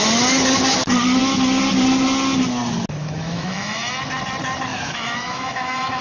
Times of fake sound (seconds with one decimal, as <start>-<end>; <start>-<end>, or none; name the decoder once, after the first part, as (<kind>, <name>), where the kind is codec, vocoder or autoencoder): 3.0-3.9 (autoencoder, DAC-VAE); 4.7-6.0